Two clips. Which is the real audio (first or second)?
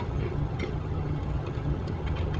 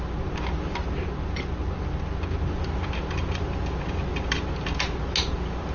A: second